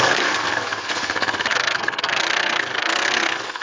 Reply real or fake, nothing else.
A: fake